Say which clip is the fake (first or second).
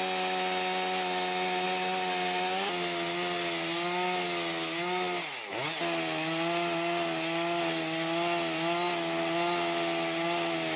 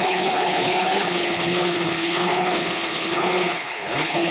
second